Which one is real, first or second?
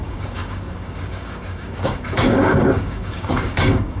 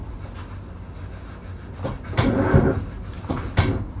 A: second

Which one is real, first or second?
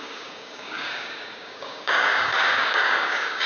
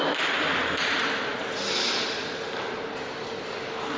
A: second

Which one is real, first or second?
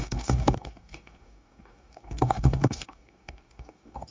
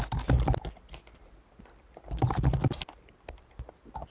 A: second